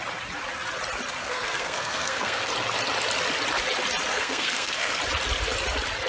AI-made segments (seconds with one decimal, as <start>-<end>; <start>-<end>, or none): 1.2-2.5; 4.1-5.0